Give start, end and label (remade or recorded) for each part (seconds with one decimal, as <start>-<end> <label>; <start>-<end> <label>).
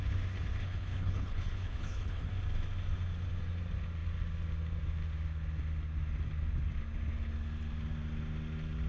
0.0-0.6 recorded; 0.6-2.3 remade; 2.3-8.9 recorded